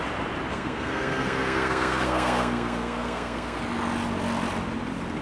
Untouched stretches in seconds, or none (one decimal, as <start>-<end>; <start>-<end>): 0.0-0.5; 3.6-5.2